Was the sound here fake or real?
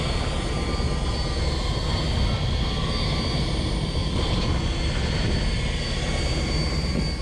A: real